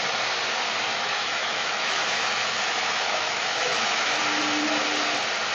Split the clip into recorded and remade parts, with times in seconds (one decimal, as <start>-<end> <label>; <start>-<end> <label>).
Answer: 0.0-0.9 recorded; 0.9-4.2 remade; 4.2-5.5 recorded